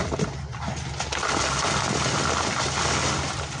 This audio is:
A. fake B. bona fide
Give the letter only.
B